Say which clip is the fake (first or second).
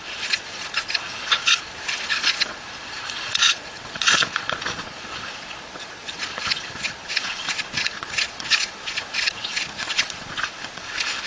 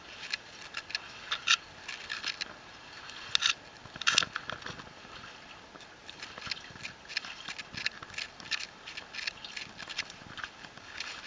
first